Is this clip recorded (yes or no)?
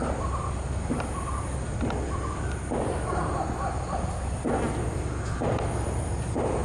yes